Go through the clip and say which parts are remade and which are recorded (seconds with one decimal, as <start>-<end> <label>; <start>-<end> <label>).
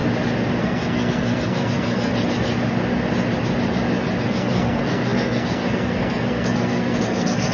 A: 0.0-0.6 recorded; 0.6-2.1 remade; 2.1-4.2 recorded; 4.2-7.5 remade